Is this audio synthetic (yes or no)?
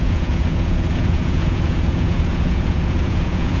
yes